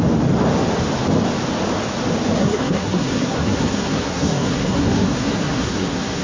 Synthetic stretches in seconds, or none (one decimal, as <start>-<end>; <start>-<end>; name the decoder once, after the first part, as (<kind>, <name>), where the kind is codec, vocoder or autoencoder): 2.4-6.2 (codec, SNAC)